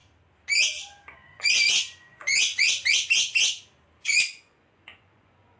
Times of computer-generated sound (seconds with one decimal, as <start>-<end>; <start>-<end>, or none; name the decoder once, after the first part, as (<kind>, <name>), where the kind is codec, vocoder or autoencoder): 1.3-2.5 (vocoder, Vocos); 4.0-5.6